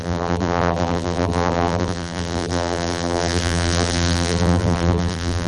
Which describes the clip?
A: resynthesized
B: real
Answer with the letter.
A